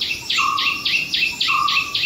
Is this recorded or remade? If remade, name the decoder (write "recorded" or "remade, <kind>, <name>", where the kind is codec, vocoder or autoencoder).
remade, vocoder, BigVGAN v2